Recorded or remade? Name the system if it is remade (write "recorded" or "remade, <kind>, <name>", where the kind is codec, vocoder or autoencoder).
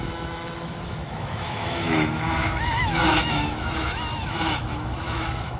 remade, autoencoder, DAC-VAE